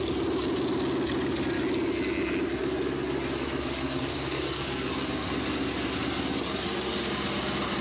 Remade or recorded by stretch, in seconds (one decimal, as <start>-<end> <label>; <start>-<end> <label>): 0.0-2.6 recorded; 2.6-4.9 remade; 4.9-7.8 recorded